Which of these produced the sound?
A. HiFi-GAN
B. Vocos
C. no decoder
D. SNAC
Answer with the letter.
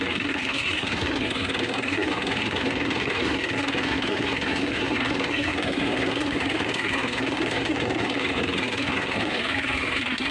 D